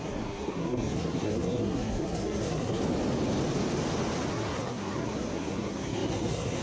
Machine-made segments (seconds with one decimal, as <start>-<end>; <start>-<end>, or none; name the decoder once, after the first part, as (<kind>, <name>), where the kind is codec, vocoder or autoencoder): 0.0-2.8 (codec, SNAC); 4.3-6.6